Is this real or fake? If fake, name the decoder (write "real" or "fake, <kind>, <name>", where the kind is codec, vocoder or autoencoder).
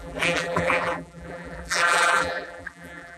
fake, vocoder, BigVGAN v2